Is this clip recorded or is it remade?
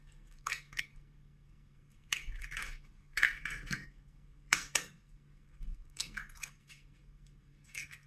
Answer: remade